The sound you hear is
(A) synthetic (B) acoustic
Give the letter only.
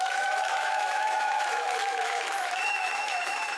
A